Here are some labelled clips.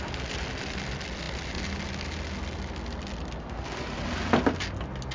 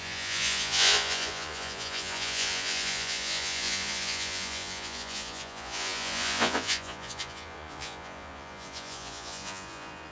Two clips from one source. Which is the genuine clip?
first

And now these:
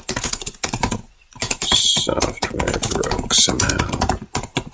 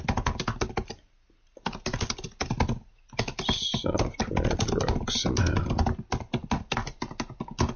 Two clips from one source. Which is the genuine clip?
second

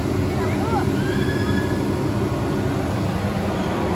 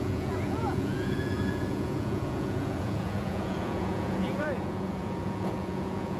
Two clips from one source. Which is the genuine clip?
first